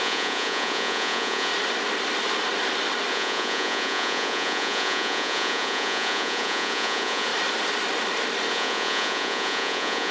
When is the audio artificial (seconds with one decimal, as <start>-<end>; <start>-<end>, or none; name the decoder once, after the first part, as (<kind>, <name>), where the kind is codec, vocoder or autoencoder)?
0.0-1.5 (vocoder, Vocos); 3.1-7.3; 8.5-10.1